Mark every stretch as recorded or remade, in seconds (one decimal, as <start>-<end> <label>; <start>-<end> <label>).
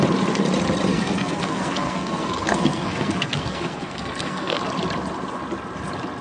0.0-0.9 recorded; 0.9-4.6 remade; 4.6-6.2 recorded